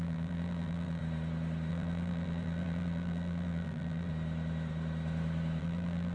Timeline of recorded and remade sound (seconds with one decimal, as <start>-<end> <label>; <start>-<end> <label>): 0.0-1.0 remade; 1.0-1.7 recorded; 1.7-4.1 remade; 4.1-5.6 recorded; 5.6-6.1 remade